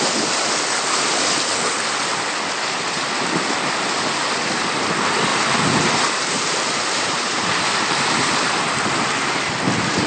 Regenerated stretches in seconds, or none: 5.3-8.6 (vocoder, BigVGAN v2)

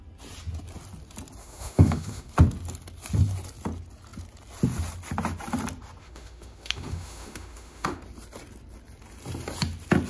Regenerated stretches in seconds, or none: 1.4-2.3 (autoencoder, DAC-VAE); 6.0-8.0

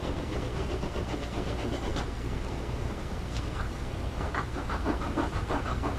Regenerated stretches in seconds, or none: 0.0-6.0 (codec, SNAC)

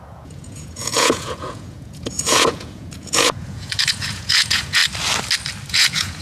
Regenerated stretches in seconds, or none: 0.0-4.8 (vocoder, Vocos); 5.7-6.2